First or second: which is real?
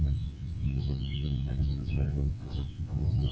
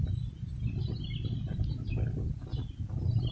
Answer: second